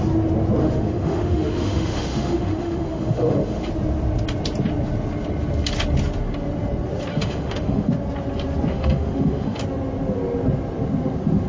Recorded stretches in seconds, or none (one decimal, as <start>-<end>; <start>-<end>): 0.0-0.6; 3.7-7.1; 7.9-8.7; 9.6-11.5